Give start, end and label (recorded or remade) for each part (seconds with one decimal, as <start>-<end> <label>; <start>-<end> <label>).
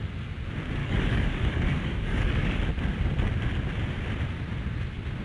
0.0-0.8 recorded; 0.8-2.6 remade; 2.6-5.2 recorded